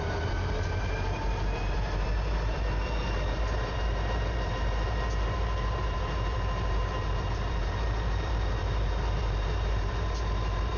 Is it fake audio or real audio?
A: fake